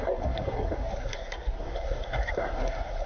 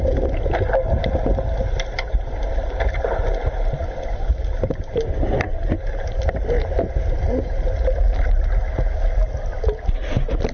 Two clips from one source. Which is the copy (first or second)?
first